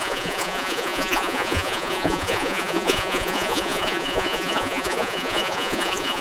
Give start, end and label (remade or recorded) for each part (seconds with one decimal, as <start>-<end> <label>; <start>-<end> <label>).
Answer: 0.0-6.2 remade